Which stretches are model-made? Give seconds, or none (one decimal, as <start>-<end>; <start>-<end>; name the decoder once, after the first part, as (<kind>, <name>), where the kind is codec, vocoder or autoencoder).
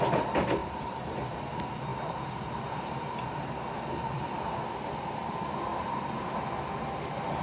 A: 0.6-1.5 (vocoder, BigVGAN v2); 1.9-3.8; 5.7-6.4